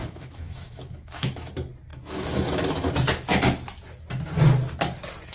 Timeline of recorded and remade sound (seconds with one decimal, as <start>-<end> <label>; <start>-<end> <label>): 0.0-1.5 remade; 1.5-1.9 recorded; 1.9-2.9 remade; 2.9-5.3 recorded